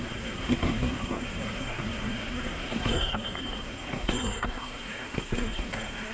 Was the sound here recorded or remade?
remade